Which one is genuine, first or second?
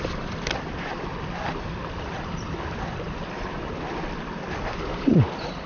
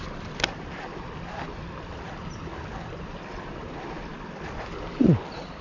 second